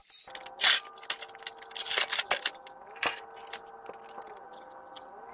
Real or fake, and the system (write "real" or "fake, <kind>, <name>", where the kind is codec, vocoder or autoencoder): real